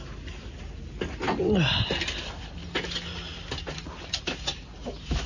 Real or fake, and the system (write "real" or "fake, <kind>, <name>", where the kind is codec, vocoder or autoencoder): real